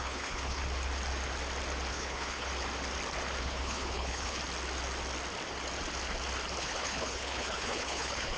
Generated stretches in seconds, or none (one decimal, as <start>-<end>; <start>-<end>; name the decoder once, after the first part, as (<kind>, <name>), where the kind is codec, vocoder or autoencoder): 0.0-0.6 (codec, HILCodec); 1.9-2.5; 3.4-4.4; 6.6-8.4